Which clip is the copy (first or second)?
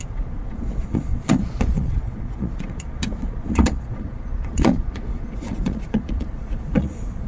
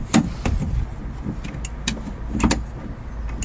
first